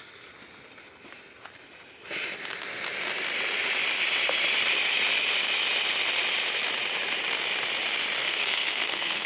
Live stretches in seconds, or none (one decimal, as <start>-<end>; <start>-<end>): 0.0-8.2